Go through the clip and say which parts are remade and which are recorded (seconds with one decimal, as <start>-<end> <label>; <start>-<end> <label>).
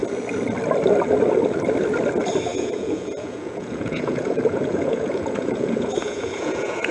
0.0-2.5 recorded; 2.5-6.9 remade